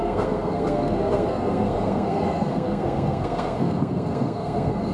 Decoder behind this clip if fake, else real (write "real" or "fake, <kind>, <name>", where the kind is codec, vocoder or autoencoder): fake, codec, SNAC